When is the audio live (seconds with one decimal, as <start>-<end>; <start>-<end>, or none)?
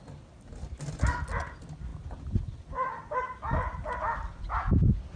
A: 0.0-5.2